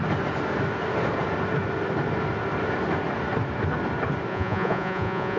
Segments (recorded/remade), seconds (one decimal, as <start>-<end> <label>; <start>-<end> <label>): 0.0-4.3 recorded; 4.3-5.4 remade